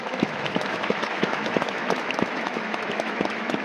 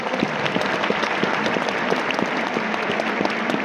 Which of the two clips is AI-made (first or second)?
first